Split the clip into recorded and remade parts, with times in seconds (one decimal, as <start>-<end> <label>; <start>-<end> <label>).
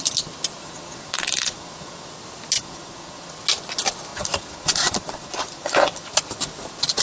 0.0-0.6 recorded; 0.6-2.1 remade; 2.1-2.6 recorded; 2.6-3.3 remade; 3.3-4.1 recorded; 4.1-6.1 remade; 6.1-7.0 recorded